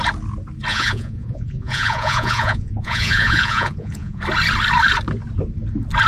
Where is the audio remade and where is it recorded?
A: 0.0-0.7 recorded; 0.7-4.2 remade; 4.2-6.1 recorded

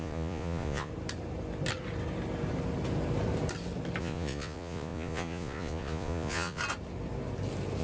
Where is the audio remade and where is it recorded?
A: 0.0-0.9 remade; 0.9-4.0 recorded; 4.0-6.6 remade; 6.6-7.8 recorded

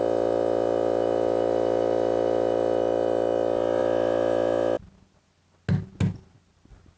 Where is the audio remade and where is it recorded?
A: 0.0-7.0 recorded

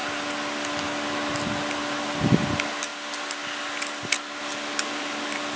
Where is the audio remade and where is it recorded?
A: 0.0-5.6 recorded